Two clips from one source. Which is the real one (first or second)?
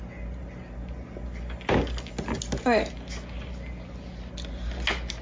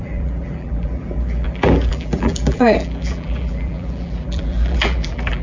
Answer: first